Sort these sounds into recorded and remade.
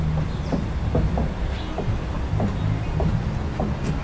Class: recorded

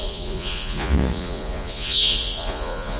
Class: remade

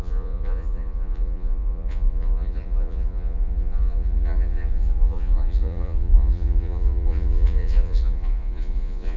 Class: remade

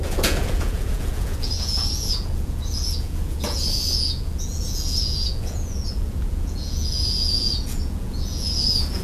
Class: remade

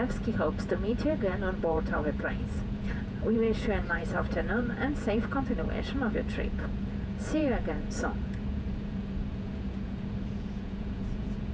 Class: remade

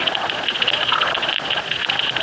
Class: remade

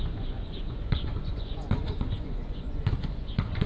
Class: remade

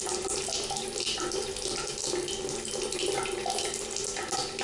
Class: recorded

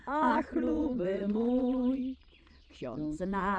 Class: remade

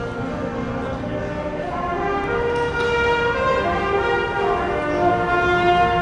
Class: recorded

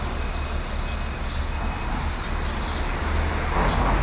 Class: recorded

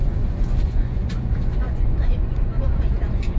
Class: remade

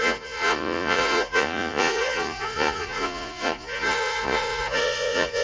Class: remade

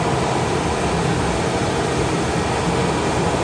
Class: recorded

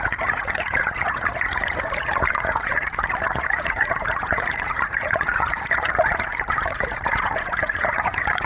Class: remade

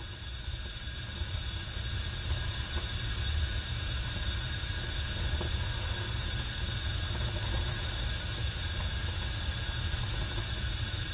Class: recorded